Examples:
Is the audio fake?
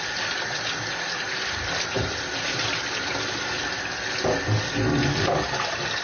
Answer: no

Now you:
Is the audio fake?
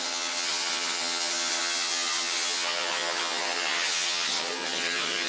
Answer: yes